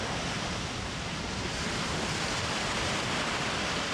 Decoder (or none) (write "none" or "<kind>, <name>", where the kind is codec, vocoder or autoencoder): none